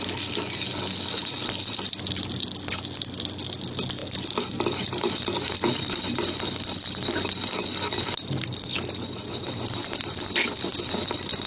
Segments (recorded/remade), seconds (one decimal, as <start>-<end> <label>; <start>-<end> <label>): 0.0-1.2 recorded; 1.2-2.1 remade; 2.1-11.5 recorded